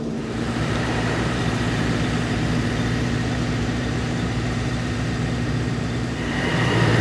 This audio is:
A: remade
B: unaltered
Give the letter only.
A